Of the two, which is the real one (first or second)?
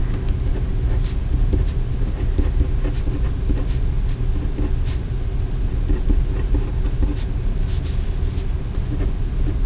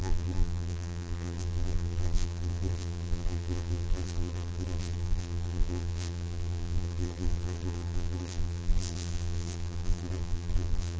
first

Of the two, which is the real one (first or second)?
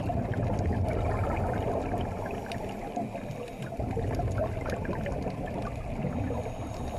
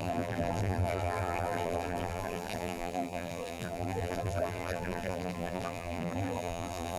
first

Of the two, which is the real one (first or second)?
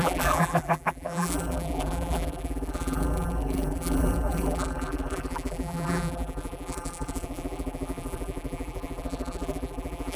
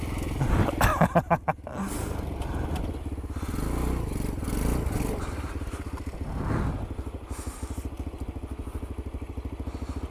second